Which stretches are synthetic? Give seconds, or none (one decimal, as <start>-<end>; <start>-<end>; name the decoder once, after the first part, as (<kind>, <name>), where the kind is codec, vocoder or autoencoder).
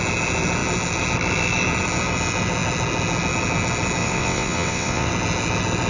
4.0-5.1 (vocoder, WaveNeXt)